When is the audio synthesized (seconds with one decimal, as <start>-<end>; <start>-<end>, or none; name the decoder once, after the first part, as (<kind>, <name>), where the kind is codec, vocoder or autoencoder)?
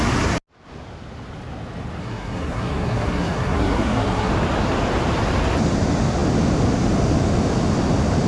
2.0-4.3 (codec, SNAC)